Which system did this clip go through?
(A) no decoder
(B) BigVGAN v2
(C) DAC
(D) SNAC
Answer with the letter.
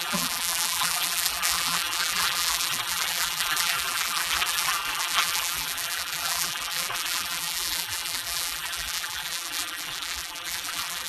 B